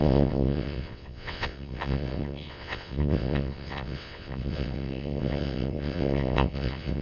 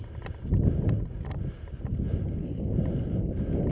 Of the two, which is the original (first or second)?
second